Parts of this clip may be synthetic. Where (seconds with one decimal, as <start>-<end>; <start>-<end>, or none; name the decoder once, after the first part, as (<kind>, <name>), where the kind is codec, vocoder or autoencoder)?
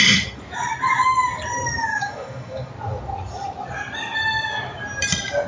1.9-2.7 (autoencoder, DAC-VAE)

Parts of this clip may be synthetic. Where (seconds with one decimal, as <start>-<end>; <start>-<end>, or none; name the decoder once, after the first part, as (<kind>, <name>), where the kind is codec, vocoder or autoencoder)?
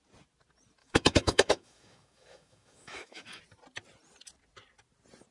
0.8-3.4 (autoencoder, DAC-VAE)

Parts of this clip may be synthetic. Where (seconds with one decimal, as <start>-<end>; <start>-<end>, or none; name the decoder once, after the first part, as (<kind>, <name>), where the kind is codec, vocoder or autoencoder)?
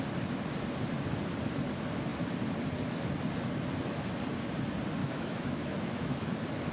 5.0-6.7 (autoencoder, DAC-VAE)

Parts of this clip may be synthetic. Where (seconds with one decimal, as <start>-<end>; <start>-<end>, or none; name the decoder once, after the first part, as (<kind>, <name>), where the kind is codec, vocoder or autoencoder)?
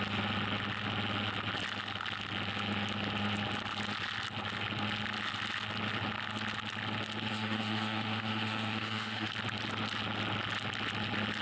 7.3-9.3 (autoencoder, DAC-VAE)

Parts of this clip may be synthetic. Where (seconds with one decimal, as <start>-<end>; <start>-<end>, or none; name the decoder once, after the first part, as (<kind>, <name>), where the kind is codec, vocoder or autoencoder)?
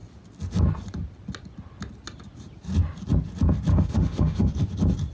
3.7-4.5 (autoencoder, DAC-VAE)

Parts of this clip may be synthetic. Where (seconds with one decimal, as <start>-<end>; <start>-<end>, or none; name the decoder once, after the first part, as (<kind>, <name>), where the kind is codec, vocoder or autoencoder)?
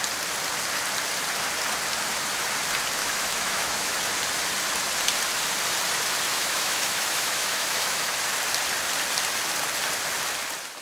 3.0-3.9 (autoencoder, DAC-VAE); 6.3-8.1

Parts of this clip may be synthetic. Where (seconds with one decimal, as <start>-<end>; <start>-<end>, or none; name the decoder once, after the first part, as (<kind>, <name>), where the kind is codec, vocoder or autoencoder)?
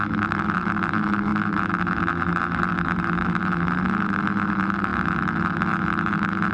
0.0-6.5 (autoencoder, DAC-VAE)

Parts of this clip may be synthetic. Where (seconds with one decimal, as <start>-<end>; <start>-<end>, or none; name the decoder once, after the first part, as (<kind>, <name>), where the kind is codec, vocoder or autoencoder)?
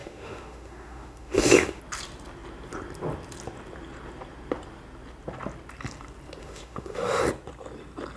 0.0-1.8 (autoencoder, DAC-VAE); 6.4-7.2